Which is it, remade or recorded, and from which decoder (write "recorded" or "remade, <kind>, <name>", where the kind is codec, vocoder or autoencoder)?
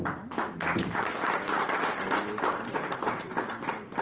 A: recorded